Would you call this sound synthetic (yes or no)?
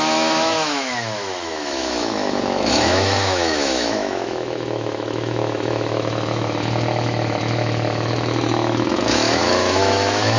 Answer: yes